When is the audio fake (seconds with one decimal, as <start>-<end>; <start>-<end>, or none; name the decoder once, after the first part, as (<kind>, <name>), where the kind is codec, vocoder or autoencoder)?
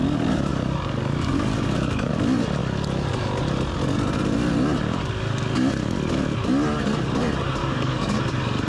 0.5-2.1 (codec, DAC); 7.6-8.2